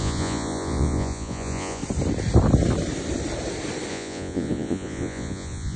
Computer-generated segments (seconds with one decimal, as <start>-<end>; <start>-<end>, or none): 0.0-1.8; 3.9-5.8